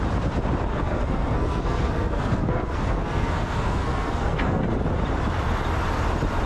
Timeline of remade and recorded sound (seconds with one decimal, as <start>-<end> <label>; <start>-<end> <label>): 0.0-0.7 recorded; 0.7-4.6 remade; 4.6-6.5 recorded